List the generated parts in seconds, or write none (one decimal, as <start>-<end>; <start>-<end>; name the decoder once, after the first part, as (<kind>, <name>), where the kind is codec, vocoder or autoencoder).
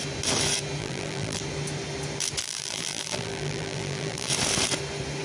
0.8-1.4 (vocoder, BigVGAN v2); 2.4-4.3